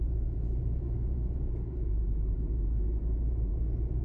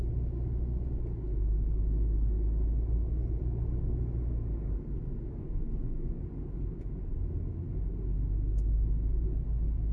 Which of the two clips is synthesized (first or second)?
first